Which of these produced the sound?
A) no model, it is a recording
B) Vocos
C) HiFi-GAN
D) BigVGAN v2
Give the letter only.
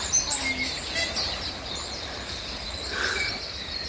A